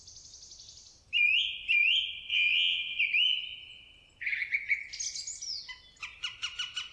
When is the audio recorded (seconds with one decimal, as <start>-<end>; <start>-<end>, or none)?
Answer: 0.0-2.3; 3.0-6.9